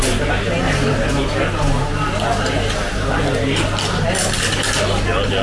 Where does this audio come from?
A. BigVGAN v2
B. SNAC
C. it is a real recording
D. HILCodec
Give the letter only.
C